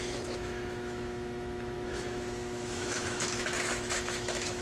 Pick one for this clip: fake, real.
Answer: fake